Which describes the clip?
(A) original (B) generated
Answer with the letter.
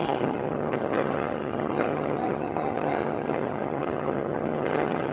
B